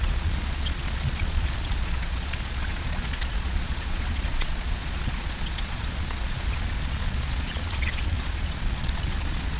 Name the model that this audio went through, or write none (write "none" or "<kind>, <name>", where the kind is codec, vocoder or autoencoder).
vocoder, Vocos